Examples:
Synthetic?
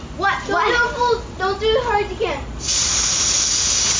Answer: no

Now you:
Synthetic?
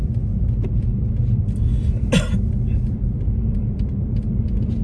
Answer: no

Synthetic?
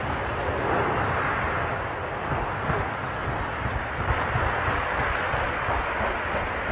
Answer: no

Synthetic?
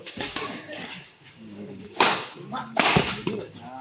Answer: yes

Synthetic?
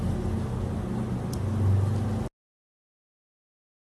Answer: no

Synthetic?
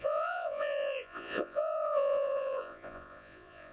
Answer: yes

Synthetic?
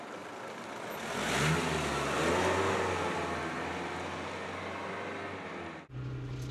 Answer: no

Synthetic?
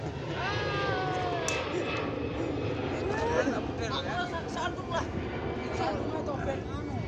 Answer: no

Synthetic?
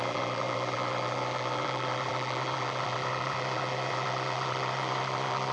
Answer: yes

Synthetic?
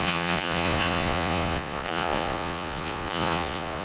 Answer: yes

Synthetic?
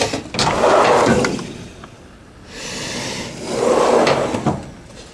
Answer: no